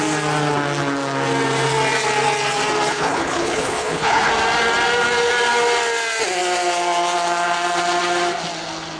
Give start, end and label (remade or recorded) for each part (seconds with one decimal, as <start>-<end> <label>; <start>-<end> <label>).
0.0-2.9 recorded; 2.9-4.3 remade; 4.3-9.0 recorded